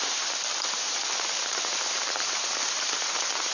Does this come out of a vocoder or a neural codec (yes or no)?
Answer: yes